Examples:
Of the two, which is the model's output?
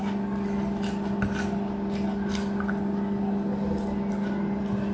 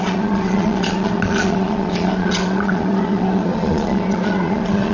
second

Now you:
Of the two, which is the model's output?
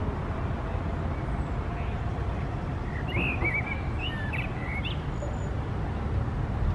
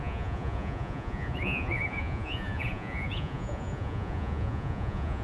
second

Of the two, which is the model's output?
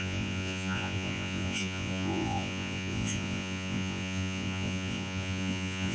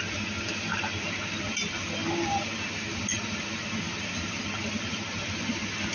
first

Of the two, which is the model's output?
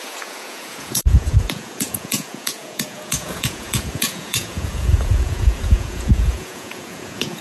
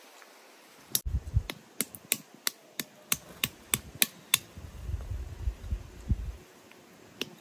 first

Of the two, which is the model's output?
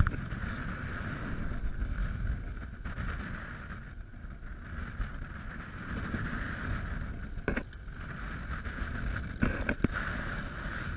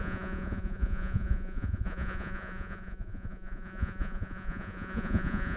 second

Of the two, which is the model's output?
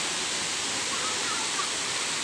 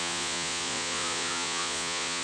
second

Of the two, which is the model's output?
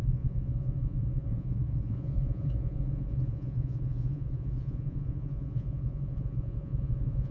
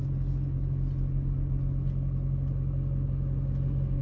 first